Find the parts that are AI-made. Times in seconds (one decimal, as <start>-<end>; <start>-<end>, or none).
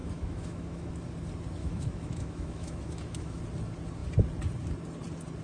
0.0-0.9; 1.6-3.4